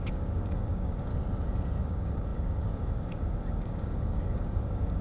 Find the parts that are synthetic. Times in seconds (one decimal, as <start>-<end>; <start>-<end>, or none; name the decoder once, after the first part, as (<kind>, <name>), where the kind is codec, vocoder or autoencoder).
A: 0.0-1.1 (codec, DAC); 1.8-5.0

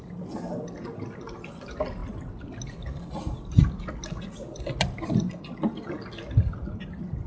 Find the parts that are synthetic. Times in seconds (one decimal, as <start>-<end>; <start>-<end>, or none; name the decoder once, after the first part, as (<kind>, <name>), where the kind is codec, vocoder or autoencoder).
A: none

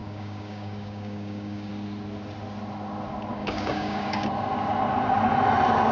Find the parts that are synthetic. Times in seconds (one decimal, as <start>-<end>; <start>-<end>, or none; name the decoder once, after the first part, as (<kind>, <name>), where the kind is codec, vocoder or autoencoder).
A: 0.0-1.7 (codec, DAC); 3.3-4.3

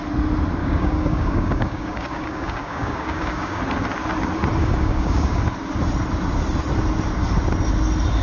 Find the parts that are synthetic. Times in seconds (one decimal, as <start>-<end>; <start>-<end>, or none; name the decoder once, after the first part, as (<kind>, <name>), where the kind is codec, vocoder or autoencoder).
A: 0.6-3.6 (codec, DAC); 4.6-5.4

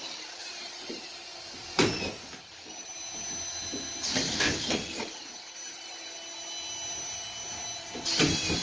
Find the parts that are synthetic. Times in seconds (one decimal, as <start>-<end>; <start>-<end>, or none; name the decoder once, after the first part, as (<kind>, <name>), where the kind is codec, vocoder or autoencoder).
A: none